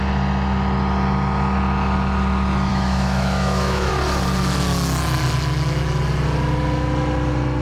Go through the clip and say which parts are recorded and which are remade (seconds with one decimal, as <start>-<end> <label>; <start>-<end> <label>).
0.0-2.7 recorded; 2.7-3.9 remade; 3.9-7.6 recorded